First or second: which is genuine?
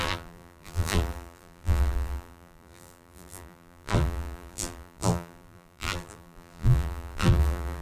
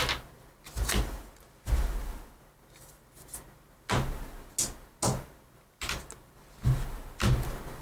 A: second